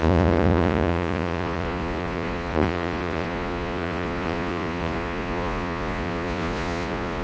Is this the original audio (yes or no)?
no